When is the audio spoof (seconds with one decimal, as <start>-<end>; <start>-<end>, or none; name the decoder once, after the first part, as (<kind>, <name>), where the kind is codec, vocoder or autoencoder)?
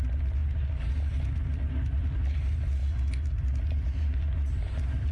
none